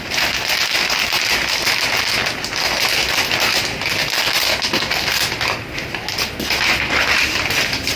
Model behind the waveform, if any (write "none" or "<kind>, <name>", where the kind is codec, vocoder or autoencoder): none